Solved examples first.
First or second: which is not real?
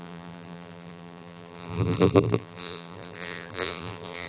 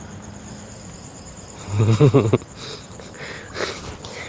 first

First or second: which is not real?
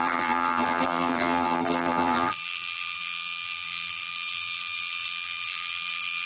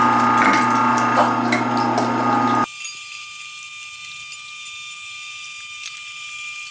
first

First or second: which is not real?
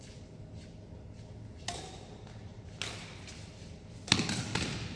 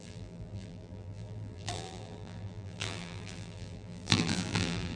second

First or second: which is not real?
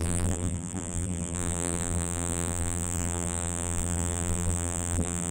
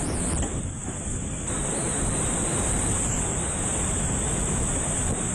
first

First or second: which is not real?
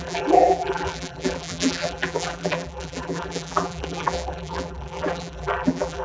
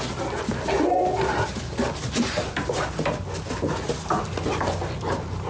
first